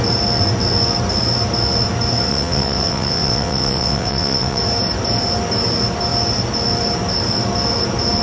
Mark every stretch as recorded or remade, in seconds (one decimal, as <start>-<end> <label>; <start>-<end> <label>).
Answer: 0.0-2.3 recorded; 2.3-4.6 remade; 4.6-8.2 recorded

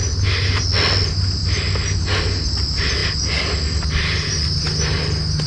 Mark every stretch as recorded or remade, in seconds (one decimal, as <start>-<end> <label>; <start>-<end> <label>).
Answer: 0.0-5.5 recorded

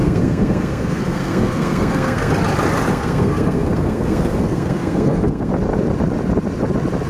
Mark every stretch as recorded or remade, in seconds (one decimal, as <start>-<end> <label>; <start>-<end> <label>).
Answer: 0.0-2.3 remade; 2.3-2.9 recorded; 2.9-5.5 remade; 5.5-7.1 recorded

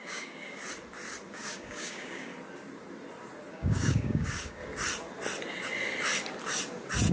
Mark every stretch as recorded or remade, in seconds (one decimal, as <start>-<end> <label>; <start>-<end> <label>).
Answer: 0.0-0.6 remade; 0.6-1.3 recorded; 1.3-2.3 remade; 2.3-3.5 recorded; 3.5-4.6 remade; 4.6-7.1 recorded